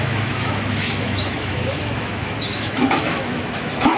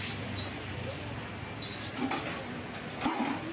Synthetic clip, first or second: first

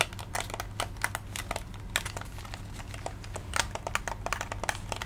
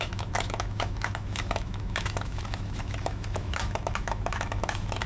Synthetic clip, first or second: second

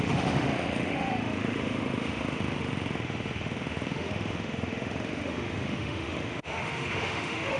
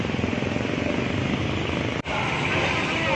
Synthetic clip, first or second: first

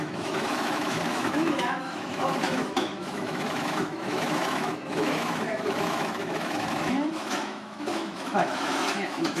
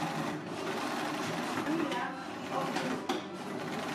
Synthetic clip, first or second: first